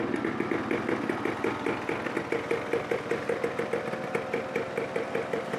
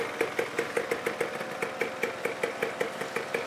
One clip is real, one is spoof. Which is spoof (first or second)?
second